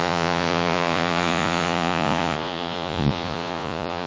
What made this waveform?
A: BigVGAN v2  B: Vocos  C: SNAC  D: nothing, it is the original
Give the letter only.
B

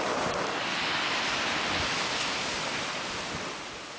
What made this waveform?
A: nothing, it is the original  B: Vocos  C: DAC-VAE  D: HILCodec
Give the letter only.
A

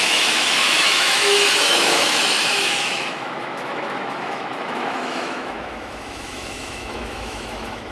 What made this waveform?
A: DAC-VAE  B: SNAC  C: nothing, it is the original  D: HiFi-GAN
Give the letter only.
A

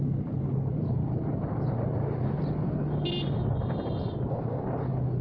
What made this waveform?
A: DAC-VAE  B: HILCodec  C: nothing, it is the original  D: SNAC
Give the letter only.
C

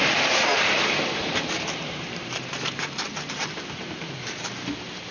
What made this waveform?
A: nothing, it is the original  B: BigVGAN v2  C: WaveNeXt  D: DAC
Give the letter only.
B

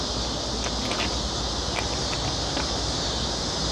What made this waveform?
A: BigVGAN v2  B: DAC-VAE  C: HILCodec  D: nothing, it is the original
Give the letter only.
D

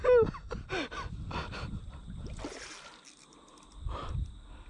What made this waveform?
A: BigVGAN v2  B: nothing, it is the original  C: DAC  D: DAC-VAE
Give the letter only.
B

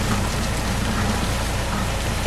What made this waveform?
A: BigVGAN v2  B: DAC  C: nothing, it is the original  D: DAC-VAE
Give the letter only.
A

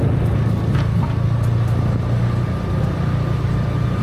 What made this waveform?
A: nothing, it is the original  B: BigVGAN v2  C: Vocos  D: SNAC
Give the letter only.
A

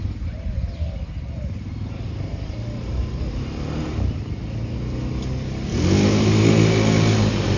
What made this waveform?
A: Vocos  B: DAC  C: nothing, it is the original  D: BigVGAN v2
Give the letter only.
C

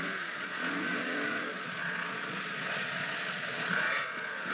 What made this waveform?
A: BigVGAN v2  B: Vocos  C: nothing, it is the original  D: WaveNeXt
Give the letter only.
B